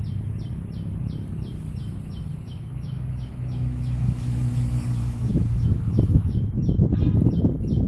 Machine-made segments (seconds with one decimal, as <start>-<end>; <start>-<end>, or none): 2.3-7.0